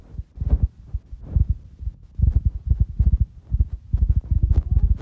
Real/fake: real